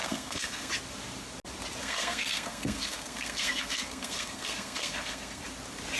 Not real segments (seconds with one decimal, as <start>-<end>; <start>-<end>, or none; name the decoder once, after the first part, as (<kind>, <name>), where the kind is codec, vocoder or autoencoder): 0.0-0.7 (codec, SNAC); 1.8-5.4